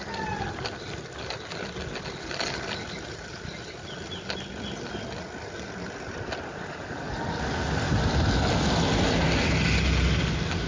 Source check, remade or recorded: recorded